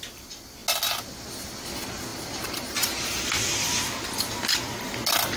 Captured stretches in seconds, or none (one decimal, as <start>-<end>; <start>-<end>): 0.0-2.1; 3.2-5.4

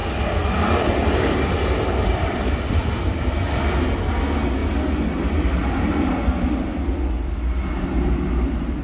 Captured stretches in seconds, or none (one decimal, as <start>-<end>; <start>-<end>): 1.4-2.0; 3.3-4.6; 6.8-8.8